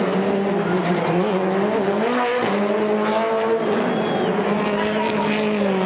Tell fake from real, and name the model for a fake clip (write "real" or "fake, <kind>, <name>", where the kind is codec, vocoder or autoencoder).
real